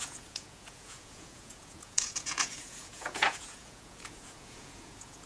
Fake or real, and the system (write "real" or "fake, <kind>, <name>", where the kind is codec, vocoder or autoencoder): fake, vocoder, Vocos